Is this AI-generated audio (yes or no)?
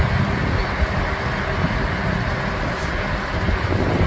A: no